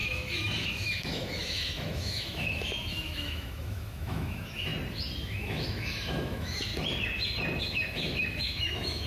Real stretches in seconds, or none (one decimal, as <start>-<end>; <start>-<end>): 4.7-5.2; 6.7-7.6